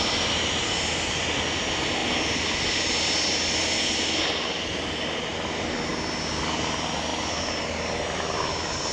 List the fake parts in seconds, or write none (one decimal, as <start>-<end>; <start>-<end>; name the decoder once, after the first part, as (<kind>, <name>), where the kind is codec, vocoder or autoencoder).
none

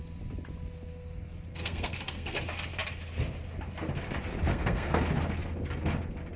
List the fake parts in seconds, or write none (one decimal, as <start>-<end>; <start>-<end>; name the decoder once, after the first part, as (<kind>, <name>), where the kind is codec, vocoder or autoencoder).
1.5-2.4 (codec, SNAC); 4.5-5.0